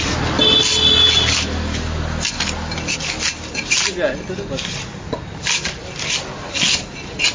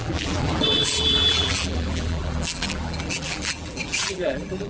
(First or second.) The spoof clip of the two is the second